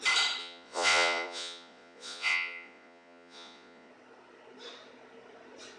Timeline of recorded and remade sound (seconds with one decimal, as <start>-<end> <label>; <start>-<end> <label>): 0.0-0.4 recorded; 0.4-3.9 remade; 3.9-5.8 recorded